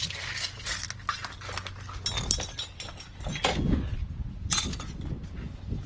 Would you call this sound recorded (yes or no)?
yes